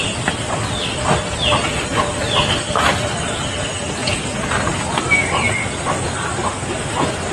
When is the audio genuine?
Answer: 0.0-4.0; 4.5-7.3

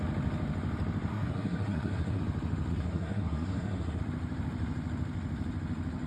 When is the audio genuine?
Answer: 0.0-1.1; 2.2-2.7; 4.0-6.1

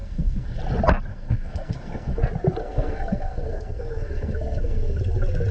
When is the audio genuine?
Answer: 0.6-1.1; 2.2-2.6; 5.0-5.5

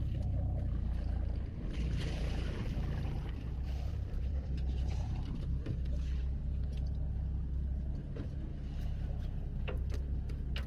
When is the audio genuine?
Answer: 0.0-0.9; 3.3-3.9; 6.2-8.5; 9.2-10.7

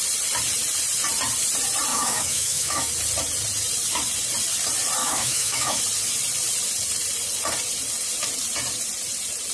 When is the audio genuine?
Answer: 0.0-1.9; 2.9-5.0; 5.8-9.5